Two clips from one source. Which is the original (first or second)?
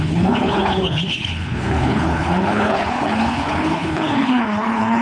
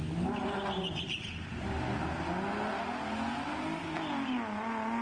second